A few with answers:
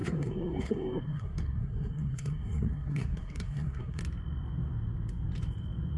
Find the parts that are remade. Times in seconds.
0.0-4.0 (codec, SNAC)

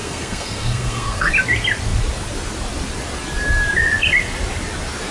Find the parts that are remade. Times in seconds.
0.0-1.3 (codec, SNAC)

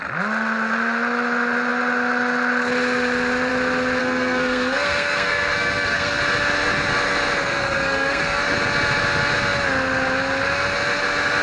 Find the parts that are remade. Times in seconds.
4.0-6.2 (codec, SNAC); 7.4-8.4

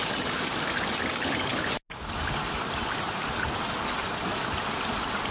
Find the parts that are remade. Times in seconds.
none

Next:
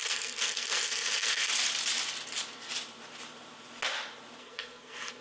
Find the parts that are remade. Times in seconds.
0.0-1.5 (codec, SNAC); 4.4-5.2

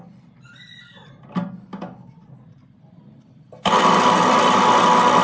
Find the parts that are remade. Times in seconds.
none